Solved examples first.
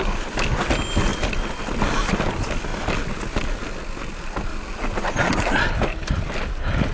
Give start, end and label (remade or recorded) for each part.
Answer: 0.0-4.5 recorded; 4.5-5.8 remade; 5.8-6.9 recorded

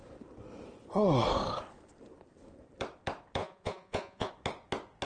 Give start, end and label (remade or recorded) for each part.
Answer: 0.0-3.4 recorded; 3.4-4.3 remade; 4.3-5.0 recorded

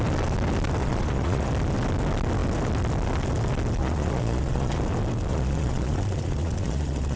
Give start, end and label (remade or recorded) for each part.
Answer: 0.0-0.8 recorded; 0.8-1.5 remade; 1.5-3.8 recorded; 3.8-4.8 remade; 4.8-5.3 recorded; 5.3-7.2 remade

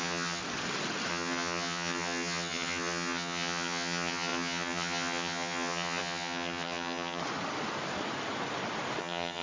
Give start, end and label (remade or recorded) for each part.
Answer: 0.0-0.4 remade; 0.4-1.1 recorded; 1.1-7.2 remade; 7.2-9.0 recorded; 9.0-9.4 remade

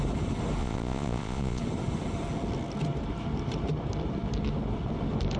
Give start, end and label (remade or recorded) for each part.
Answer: 0.0-0.6 recorded; 0.6-1.6 remade; 1.6-5.4 recorded

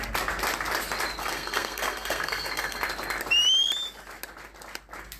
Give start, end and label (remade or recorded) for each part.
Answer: 0.0-1.2 recorded; 1.2-2.8 remade; 2.8-5.2 recorded

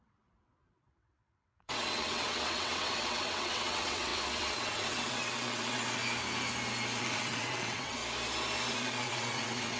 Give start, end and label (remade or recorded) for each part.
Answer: 0.0-6.0 remade; 6.0-7.0 recorded; 7.0-8.0 remade; 8.0-8.7 recorded; 8.7-9.8 remade

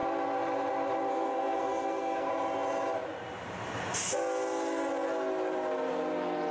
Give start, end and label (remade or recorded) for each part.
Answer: 0.0-1.1 recorded; 1.1-2.3 remade; 2.3-6.5 recorded